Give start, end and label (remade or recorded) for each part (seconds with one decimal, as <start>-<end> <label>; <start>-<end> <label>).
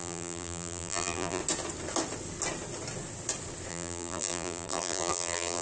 0.0-1.4 remade; 1.4-3.7 recorded; 3.7-5.6 remade